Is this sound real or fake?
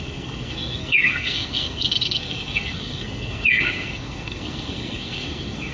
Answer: fake